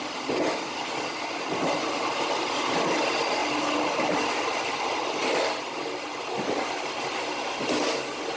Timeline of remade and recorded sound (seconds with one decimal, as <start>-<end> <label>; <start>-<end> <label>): 0.0-8.4 recorded